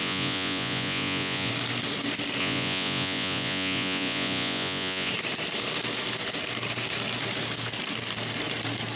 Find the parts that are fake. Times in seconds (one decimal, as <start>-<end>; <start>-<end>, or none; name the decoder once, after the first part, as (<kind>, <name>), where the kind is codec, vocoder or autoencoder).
0.0-1.5 (vocoder, Vocos); 2.4-5.1